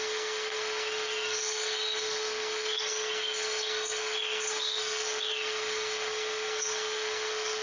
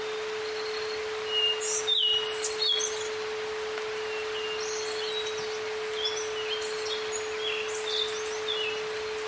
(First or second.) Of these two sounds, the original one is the second